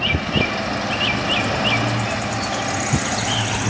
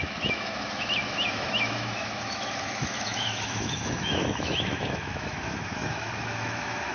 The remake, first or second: second